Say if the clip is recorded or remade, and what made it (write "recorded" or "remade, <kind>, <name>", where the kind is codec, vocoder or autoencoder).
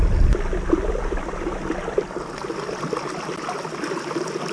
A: recorded